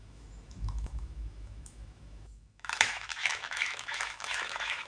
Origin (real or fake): fake